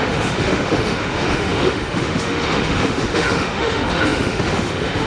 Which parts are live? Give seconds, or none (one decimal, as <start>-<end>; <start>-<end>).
none